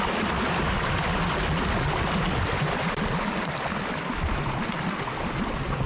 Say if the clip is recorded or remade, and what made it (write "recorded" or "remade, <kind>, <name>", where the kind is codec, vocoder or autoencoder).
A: recorded